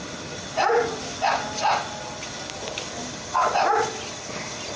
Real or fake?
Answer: real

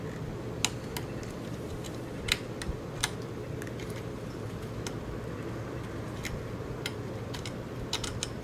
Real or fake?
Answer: real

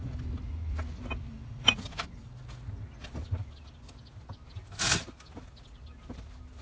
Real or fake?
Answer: real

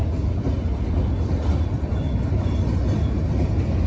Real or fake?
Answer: real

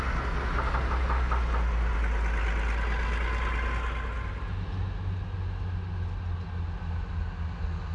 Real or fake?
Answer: real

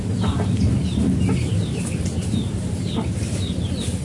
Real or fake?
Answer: fake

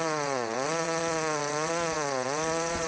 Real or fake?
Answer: fake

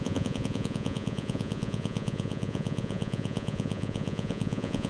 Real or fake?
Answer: fake